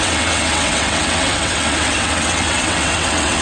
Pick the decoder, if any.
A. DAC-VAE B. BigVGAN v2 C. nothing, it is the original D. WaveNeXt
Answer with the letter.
D